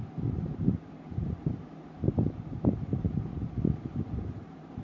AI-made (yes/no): yes